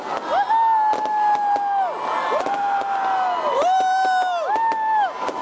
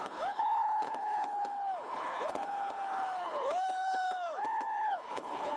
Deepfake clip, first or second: second